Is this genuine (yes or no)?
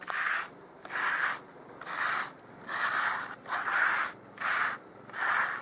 yes